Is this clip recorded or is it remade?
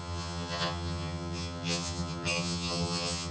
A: remade